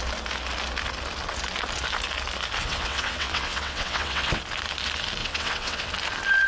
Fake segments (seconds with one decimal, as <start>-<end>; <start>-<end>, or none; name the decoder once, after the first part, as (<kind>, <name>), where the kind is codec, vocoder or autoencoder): 2.6-4.4 (vocoder, WaveNeXt); 5.2-5.9